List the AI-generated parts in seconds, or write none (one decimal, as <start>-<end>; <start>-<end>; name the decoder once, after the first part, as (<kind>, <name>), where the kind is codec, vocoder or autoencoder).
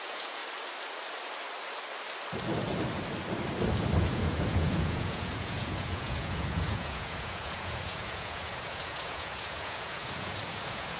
0.0-0.4 (vocoder, Vocos); 4.0-11.0